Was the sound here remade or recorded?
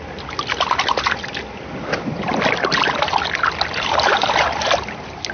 recorded